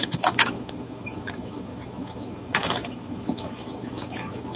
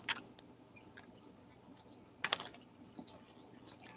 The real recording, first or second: second